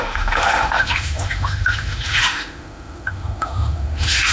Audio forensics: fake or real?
fake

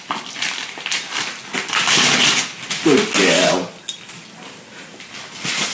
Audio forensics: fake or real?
real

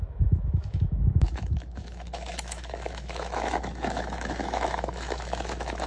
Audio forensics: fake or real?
fake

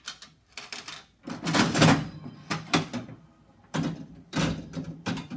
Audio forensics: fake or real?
real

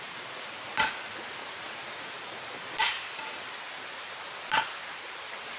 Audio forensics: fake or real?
real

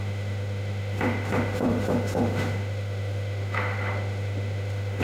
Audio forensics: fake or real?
fake